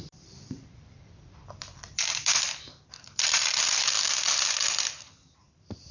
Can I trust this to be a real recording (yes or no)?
no